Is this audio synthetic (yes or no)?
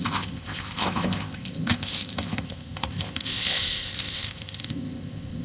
yes